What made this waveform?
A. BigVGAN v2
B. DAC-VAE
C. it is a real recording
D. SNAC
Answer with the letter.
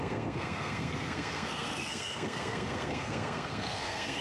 D